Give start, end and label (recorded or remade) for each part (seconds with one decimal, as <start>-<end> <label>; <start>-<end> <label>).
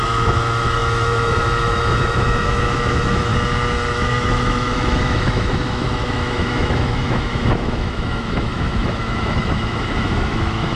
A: 0.0-3.3 remade; 3.3-3.9 recorded; 3.9-10.8 remade